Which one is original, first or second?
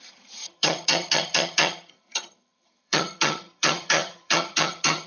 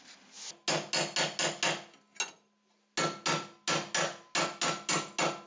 second